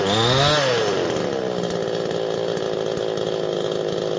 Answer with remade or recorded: recorded